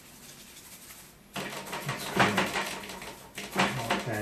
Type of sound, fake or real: real